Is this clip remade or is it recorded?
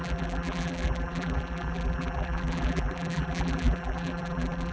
remade